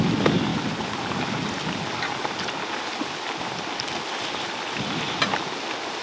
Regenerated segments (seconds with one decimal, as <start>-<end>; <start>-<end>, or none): none